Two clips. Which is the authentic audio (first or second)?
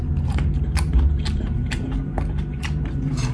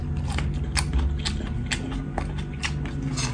second